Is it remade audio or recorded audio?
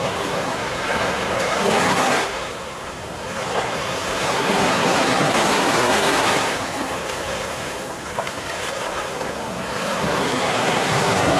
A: remade